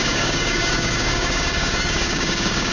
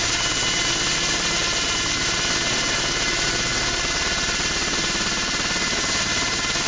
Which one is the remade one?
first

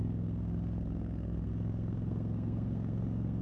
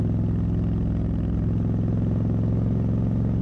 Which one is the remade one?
first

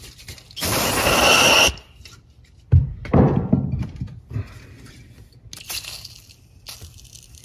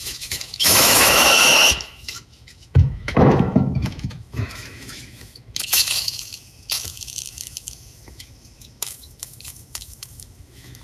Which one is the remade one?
second